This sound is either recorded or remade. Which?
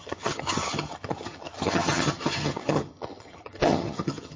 remade